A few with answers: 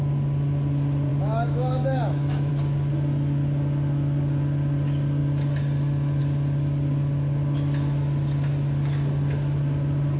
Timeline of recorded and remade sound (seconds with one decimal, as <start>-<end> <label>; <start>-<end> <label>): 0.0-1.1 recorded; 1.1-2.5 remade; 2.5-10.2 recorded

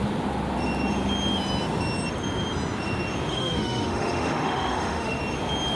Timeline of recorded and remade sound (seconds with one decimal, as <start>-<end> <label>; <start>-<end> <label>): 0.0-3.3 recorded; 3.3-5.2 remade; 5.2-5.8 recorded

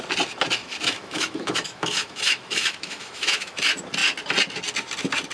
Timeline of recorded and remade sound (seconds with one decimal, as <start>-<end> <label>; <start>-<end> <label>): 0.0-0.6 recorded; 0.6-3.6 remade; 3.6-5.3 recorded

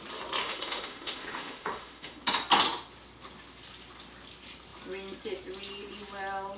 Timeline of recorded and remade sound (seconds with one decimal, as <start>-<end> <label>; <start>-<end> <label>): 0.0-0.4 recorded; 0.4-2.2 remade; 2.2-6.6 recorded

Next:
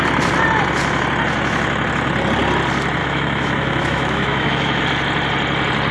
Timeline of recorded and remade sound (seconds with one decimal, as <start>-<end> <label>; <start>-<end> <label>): 0.0-3.0 recorded; 3.0-4.8 remade; 4.8-5.9 recorded